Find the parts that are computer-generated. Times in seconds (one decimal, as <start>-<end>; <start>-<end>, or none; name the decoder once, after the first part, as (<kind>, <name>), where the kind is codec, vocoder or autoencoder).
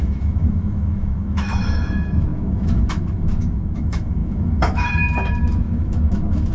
0.0-6.5 (autoencoder, DAC-VAE)